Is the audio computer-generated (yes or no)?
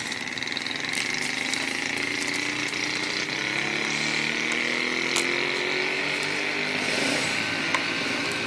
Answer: no